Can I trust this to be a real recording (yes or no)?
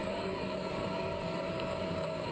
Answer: no